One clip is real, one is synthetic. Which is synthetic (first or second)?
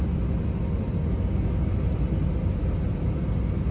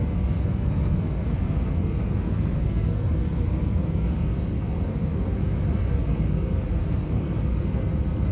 second